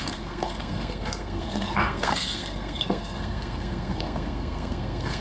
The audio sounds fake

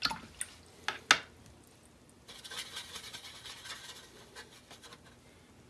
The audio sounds real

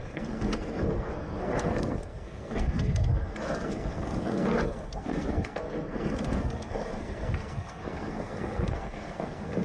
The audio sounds fake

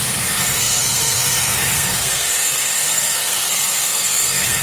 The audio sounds fake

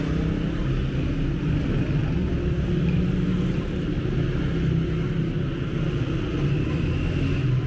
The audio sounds real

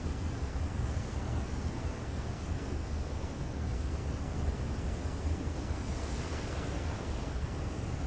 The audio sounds fake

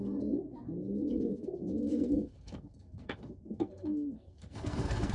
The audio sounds fake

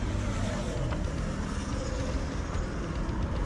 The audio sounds real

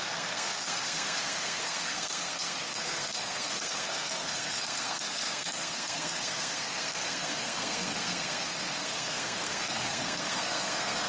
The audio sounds fake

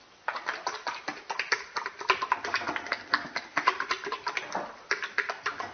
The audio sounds real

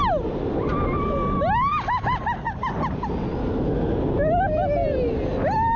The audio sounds real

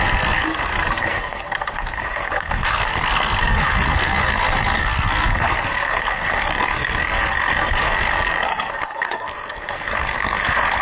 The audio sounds fake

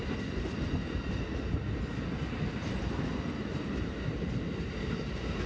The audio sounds real